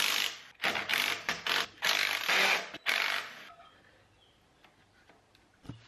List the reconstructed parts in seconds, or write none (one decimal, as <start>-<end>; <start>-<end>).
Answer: none